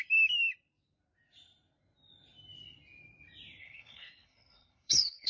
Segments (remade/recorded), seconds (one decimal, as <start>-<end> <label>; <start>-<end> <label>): 0.0-3.6 recorded; 3.6-5.3 remade